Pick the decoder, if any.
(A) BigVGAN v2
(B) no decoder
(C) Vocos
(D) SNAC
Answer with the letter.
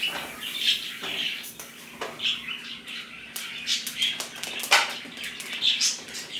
B